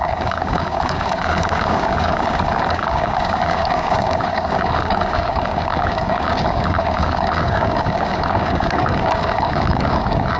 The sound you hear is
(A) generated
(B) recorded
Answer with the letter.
A